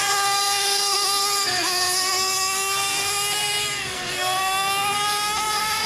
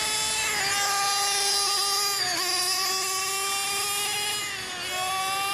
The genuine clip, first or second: second